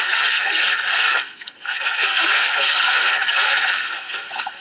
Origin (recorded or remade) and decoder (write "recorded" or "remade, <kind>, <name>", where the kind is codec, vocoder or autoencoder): remade, codec, SNAC